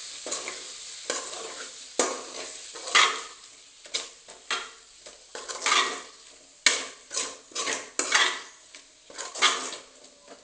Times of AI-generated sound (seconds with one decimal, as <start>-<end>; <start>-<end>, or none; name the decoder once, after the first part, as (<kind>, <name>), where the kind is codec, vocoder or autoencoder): none